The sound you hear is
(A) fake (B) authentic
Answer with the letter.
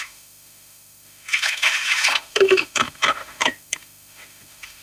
A